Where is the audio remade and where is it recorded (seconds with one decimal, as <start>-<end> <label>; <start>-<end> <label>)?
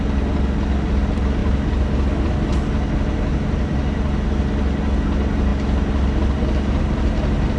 0.0-7.6 recorded